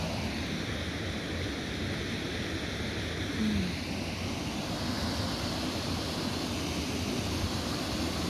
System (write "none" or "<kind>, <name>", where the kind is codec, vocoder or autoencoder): none